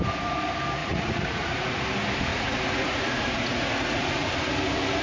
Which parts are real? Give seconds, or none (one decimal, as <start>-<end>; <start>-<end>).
0.0-0.8; 1.8-2.3; 4.3-5.0